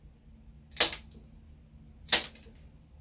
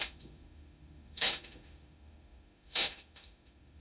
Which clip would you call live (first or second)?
first